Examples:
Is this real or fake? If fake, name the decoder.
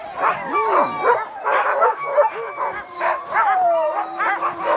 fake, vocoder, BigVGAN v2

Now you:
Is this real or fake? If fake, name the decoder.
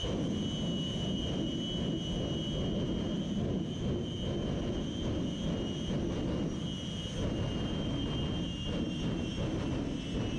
real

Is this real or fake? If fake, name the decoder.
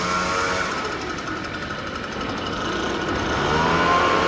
real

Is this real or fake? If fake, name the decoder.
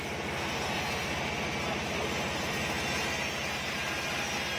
real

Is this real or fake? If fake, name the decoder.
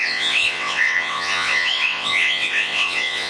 fake, vocoder, WaveNeXt